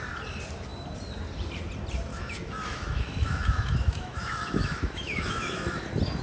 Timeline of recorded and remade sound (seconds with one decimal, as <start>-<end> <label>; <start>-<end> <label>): 0.0-2.1 recorded; 2.1-5.8 remade; 5.8-6.2 recorded